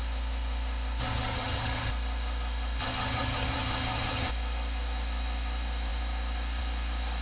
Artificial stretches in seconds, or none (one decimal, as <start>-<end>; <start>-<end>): 1.0-1.9; 2.8-4.3